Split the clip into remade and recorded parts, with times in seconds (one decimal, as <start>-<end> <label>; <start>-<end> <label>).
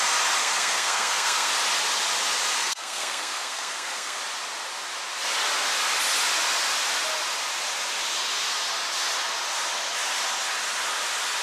0.0-0.4 recorded; 0.4-1.5 remade; 1.5-2.6 recorded; 2.6-4.2 remade; 4.2-11.4 recorded